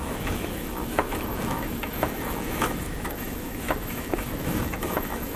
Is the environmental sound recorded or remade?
remade